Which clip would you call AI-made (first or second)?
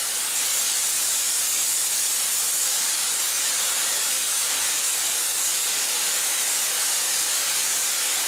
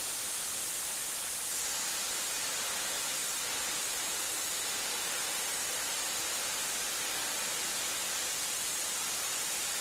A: first